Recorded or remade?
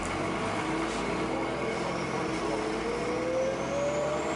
recorded